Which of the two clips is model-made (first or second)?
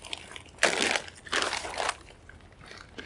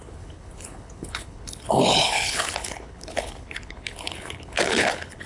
second